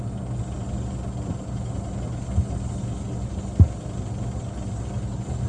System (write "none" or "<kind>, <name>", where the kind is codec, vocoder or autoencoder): none